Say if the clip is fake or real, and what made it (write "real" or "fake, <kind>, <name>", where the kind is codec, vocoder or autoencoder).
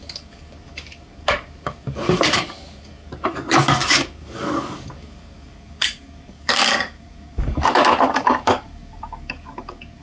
fake, codec, DAC